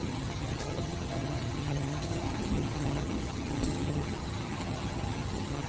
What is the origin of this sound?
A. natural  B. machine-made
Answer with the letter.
B